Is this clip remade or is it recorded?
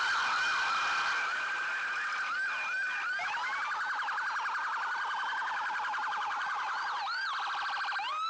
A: recorded